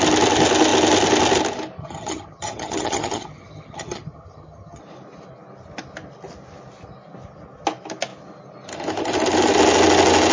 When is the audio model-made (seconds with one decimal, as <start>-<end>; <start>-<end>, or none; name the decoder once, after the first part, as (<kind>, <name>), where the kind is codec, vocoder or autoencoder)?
1.8-4.8 (vocoder, HiFi-GAN)